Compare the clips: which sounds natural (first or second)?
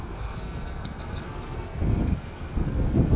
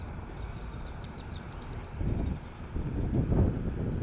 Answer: second